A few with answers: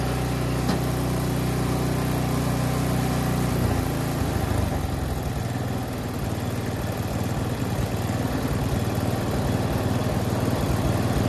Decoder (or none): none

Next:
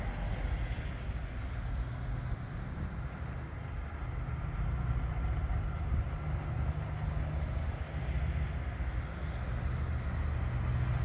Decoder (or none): none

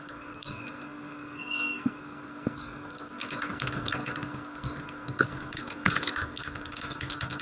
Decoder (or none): codec, SNAC